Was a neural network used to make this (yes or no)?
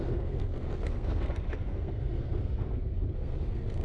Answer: yes